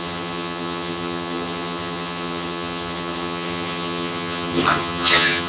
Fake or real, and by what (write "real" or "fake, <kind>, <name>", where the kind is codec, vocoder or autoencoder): fake, vocoder, HiFi-GAN